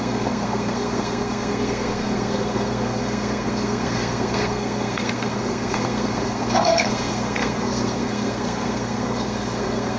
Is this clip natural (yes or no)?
no